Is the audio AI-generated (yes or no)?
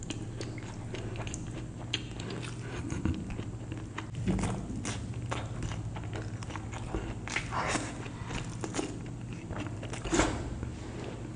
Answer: no